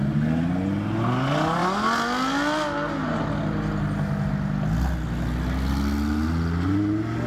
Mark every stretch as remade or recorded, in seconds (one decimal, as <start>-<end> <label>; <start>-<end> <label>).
0.0-7.3 recorded

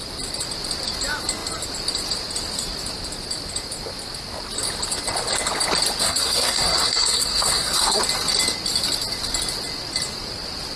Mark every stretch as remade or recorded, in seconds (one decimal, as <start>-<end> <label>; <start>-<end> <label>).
0.0-6.0 recorded; 6.0-8.0 remade; 8.0-10.8 recorded

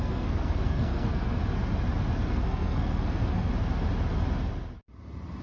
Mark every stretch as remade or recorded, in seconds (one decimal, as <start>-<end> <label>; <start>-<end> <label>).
0.0-1.4 remade; 1.4-2.3 recorded; 2.3-3.5 remade; 3.5-5.4 recorded

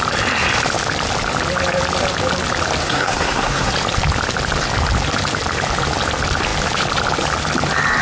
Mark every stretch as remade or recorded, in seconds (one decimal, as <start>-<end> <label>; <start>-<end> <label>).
0.0-2.8 recorded; 2.8-3.7 remade; 3.7-8.0 recorded